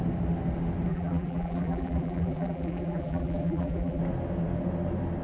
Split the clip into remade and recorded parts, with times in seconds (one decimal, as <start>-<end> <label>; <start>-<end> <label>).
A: 0.0-0.9 recorded; 0.9-4.0 remade; 4.0-5.2 recorded